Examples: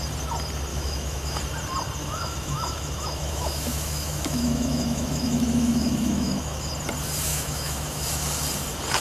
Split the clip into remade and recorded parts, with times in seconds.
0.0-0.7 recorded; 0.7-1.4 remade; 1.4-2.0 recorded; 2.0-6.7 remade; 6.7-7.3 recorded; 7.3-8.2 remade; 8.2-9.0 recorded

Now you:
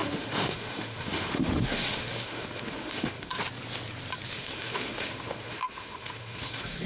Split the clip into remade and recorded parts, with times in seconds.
0.0-3.3 remade; 3.3-4.3 recorded; 4.3-6.9 remade

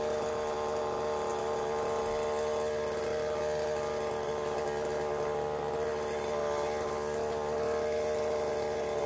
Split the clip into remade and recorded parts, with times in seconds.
0.0-9.1 recorded

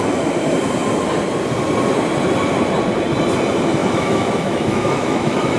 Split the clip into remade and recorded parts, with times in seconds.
0.0-3.8 recorded; 3.8-5.6 remade